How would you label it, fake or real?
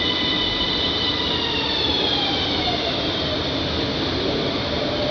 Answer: real